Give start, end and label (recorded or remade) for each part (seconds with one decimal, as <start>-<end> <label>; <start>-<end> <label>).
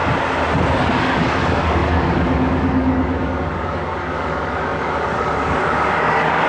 0.0-0.8 recorded; 0.8-6.5 remade